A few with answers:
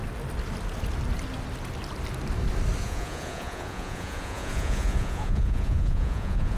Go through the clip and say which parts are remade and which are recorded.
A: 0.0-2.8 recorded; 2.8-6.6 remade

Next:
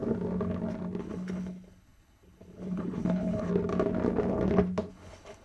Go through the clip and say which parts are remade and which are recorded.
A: 0.0-1.0 recorded; 1.0-3.5 remade; 3.5-4.9 recorded; 4.9-5.4 remade

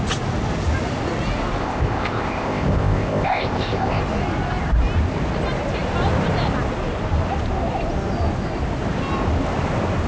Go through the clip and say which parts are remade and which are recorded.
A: 0.0-1.6 recorded; 1.6-4.0 remade; 4.0-10.1 recorded

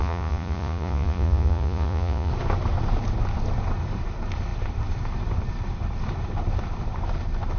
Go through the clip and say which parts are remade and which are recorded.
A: 0.0-2.3 remade; 2.3-7.6 recorded

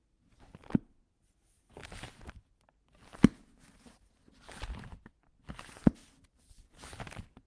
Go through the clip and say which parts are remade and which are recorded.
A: 0.0-7.5 recorded

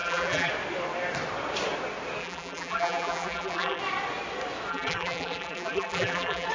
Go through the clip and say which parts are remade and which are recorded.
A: 0.0-0.5 remade; 0.5-2.2 recorded; 2.2-3.8 remade; 3.8-4.7 recorded; 4.7-6.5 remade

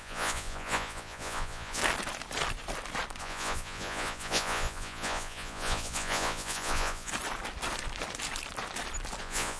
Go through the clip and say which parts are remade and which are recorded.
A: 0.0-1.8 remade; 1.8-3.2 recorded; 3.2-7.1 remade; 7.1-9.2 recorded; 9.2-9.6 remade